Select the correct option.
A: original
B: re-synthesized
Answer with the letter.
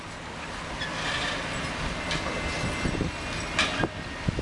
A